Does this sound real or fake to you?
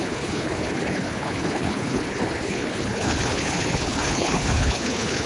fake